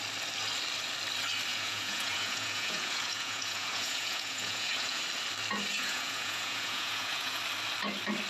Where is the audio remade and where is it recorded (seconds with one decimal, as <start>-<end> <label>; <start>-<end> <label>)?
0.0-1.5 recorded; 1.5-5.0 remade; 5.0-5.7 recorded; 5.7-7.4 remade; 7.4-8.3 recorded